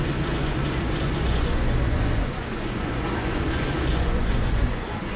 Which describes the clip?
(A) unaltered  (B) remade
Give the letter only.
B